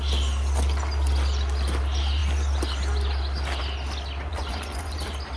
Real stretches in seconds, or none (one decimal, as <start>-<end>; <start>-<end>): 0.0-4.3; 5.0-5.4